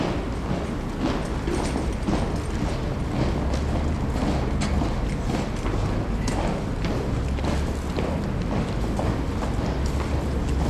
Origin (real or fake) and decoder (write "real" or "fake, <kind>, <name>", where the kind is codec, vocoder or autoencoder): real